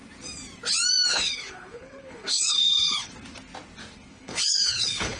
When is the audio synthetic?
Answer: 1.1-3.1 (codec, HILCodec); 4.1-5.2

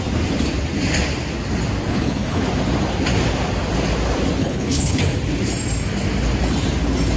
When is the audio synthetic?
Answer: 1.9-2.4 (codec, HILCodec); 4.4-5.0

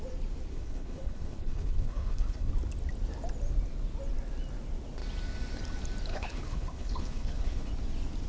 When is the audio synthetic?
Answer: 0.5-2.5 (codec, HILCodec); 6.1-7.7

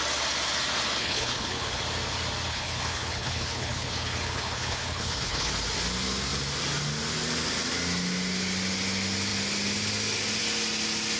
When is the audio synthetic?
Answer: 1.0-1.8 (codec, HILCodec); 2.5-5.5

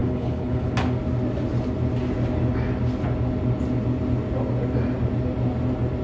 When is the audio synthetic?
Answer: 0.0-0.7 (codec, HILCodec)